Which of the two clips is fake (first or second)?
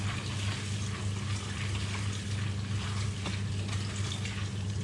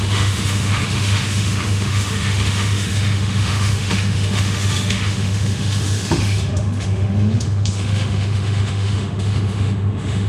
second